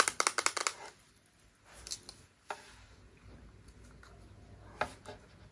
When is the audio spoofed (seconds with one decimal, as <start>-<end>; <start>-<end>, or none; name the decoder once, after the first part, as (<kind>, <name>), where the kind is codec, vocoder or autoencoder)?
none